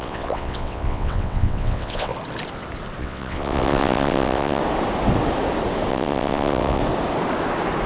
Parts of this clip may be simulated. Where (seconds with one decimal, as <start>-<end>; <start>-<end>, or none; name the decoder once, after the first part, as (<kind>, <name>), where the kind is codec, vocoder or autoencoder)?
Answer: 0.0-2.1 (vocoder, WaveNeXt); 3.0-4.6; 5.9-6.8